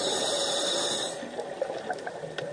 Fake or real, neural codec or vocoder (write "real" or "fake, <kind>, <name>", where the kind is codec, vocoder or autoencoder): real